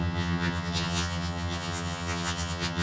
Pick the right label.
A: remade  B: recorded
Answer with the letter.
A